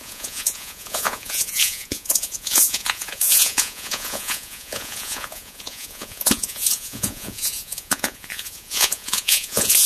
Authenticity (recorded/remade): remade